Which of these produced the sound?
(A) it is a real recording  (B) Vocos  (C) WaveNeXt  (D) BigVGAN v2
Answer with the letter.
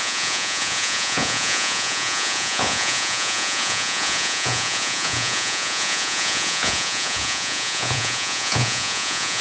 B